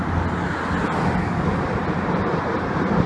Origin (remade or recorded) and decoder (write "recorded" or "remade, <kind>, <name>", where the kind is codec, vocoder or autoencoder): recorded